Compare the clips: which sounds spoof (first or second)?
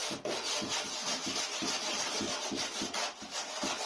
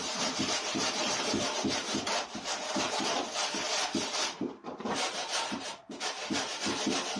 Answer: second